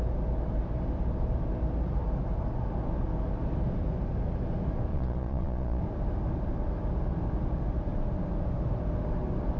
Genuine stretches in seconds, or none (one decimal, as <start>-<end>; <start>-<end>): 0.0-4.9; 5.8-9.6